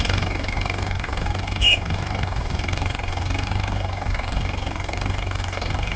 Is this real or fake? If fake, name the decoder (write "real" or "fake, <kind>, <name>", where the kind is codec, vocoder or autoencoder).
fake, codec, DAC